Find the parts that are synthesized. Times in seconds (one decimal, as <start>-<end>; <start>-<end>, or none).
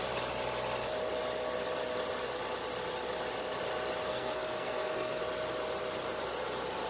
4.1-5.2